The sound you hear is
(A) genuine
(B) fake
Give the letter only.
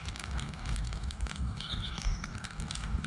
B